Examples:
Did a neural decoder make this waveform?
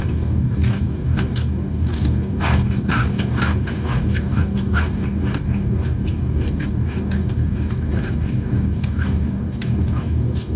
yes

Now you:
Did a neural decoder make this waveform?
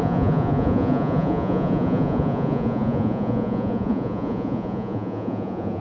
yes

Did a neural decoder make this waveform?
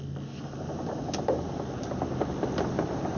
no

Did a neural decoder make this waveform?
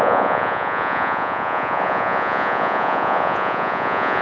yes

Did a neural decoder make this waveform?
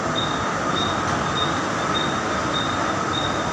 no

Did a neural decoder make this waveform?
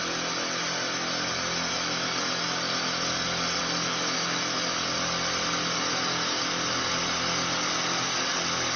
no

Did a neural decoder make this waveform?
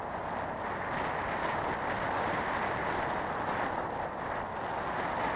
no